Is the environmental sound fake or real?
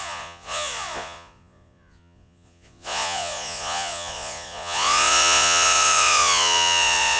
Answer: fake